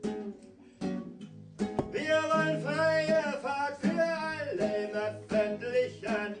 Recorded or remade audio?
recorded